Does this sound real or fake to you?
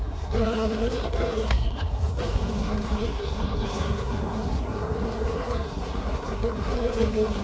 fake